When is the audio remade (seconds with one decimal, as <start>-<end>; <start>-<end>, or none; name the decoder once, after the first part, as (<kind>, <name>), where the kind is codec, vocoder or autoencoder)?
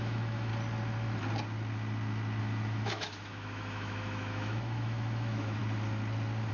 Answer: 0.0-0.5 (autoencoder, DAC-VAE); 2.4-5.6